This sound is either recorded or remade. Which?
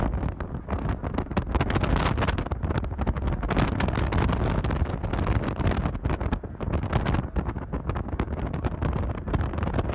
recorded